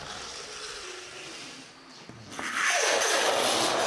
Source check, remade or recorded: recorded